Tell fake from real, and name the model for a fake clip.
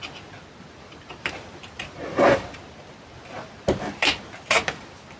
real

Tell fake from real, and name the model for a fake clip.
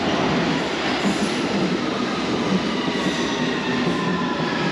real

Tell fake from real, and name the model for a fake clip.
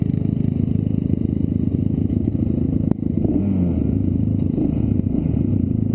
real